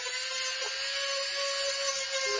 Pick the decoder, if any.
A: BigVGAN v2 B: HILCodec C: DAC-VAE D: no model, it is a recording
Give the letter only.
D